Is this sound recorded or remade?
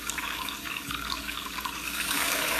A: remade